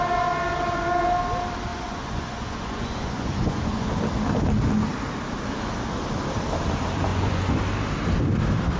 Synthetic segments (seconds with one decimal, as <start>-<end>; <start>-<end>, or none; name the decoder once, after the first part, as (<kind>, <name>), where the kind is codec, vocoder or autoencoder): 1.7-3.9 (vocoder, Vocos); 7.1-7.6